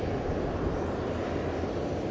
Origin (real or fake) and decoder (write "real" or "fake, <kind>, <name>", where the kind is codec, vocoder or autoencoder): real